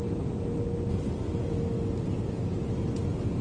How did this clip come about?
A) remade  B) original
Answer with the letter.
B